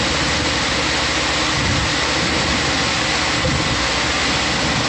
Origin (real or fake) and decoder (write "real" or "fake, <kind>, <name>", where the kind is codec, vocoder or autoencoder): real